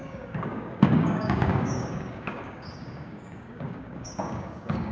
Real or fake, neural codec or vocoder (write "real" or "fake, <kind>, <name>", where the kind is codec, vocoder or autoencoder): fake, codec, DAC